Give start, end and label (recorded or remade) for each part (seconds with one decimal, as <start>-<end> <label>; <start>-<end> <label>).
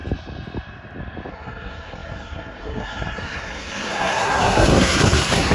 0.0-1.3 recorded; 1.3-5.5 remade